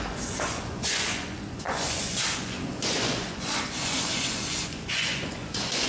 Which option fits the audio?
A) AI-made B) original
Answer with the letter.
A